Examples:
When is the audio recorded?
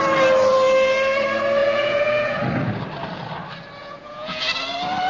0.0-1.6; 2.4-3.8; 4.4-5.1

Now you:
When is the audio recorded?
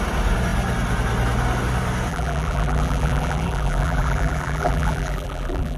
0.0-2.1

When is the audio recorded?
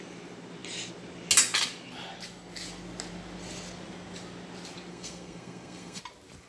0.0-4.9; 6.0-6.5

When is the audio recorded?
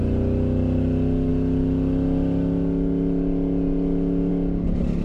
0.0-5.0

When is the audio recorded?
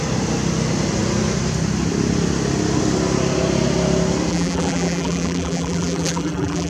0.0-4.3